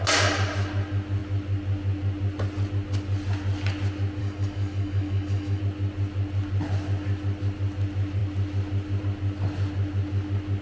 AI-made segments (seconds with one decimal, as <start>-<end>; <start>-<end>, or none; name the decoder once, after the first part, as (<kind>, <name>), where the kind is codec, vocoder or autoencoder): 4.2-5.6 (codec, DAC)